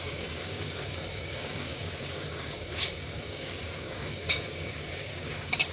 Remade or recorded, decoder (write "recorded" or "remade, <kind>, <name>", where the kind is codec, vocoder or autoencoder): remade, codec, DAC